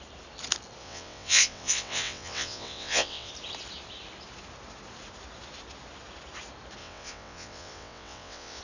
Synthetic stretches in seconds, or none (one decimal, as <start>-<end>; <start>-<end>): 0.8-3.3; 6.8-8.6